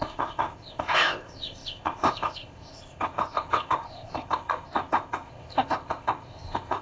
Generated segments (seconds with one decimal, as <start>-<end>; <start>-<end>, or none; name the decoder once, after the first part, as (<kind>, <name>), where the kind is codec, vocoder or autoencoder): 0.0-6.8 (codec, ZipCodec)